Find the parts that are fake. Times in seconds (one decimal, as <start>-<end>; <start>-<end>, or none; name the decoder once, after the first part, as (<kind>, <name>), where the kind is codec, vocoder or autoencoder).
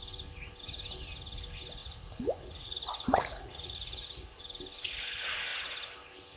1.8-4.4 (vocoder, Vocos)